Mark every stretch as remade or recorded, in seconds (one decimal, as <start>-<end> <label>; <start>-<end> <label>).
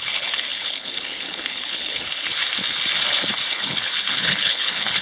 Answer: 0.0-2.4 remade; 2.4-3.5 recorded; 3.5-5.0 remade